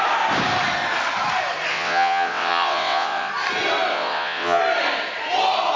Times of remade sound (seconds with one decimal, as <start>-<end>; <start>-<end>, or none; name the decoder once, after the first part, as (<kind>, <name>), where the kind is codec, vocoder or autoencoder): 1.7-3.3 (vocoder, WaveNeXt); 3.9-4.6